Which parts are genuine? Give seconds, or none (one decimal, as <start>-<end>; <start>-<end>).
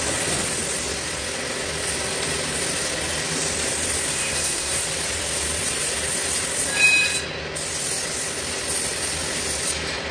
0.0-4.1; 4.8-10.1